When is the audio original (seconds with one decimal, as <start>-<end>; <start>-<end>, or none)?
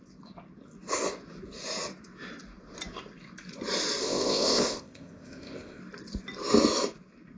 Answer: 0.0-4.0; 5.8-7.4